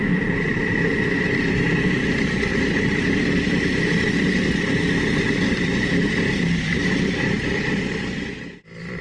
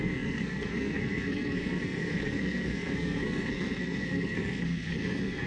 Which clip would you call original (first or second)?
first